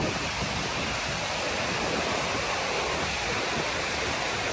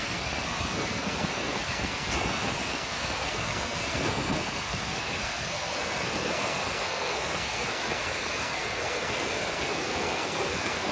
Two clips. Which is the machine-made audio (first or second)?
second